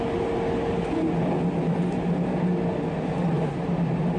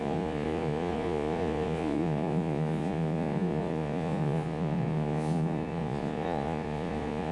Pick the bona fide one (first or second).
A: first